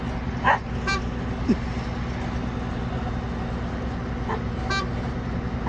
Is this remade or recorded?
recorded